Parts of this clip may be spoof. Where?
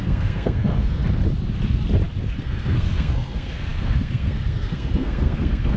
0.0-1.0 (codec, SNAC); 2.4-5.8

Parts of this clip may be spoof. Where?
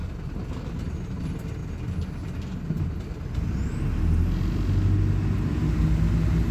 none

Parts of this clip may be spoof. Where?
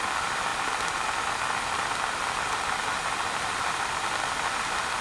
none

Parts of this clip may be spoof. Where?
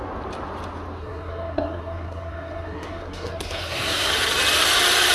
1.0-4.1 (codec, SNAC)